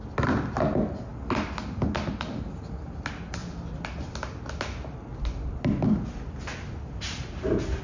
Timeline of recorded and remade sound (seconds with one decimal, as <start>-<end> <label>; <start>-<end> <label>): 0.0-7.8 recorded